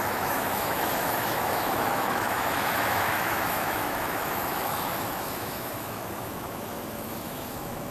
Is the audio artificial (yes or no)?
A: yes